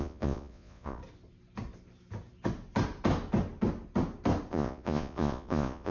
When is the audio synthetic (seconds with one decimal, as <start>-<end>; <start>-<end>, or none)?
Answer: 0.0-1.0; 4.5-5.9

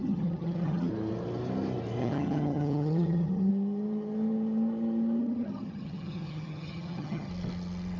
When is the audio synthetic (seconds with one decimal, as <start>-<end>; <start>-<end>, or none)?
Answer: 0.0-0.9; 2.0-3.5; 5.2-7.3

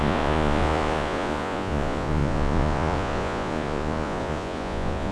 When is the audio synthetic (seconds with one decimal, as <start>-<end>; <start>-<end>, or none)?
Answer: 0.0-5.1

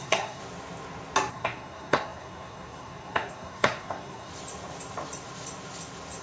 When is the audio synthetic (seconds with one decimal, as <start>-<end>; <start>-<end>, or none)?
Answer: 0.0-0.4; 1.3-4.3

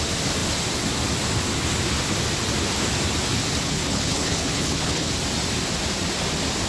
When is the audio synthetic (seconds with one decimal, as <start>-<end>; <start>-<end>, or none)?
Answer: 3.6-5.1

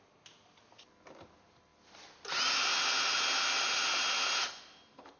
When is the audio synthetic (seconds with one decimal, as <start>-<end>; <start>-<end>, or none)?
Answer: none

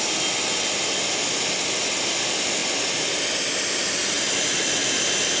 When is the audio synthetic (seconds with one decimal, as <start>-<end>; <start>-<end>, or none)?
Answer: none

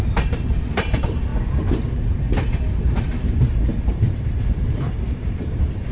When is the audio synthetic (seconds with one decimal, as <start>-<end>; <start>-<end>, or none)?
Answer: 0.0-1.3; 2.8-5.9